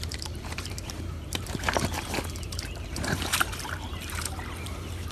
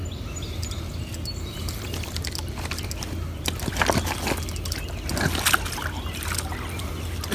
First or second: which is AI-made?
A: first